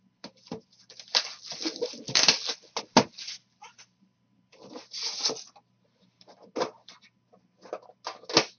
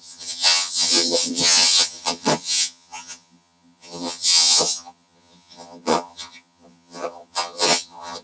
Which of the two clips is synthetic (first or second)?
second